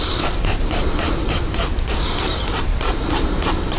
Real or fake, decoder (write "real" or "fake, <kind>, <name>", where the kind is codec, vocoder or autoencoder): fake, vocoder, BigVGAN v2